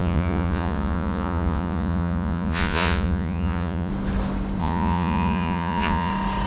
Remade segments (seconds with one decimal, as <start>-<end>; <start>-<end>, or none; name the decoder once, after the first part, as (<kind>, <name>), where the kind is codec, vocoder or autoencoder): 0.0-3.9 (vocoder, Vocos); 4.6-6.1